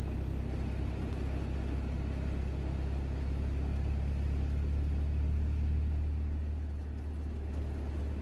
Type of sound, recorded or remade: recorded